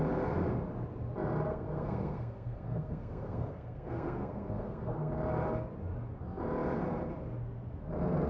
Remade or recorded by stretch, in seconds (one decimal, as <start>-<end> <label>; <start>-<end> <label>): 0.0-1.5 recorded; 1.5-5.1 remade; 5.1-8.3 recorded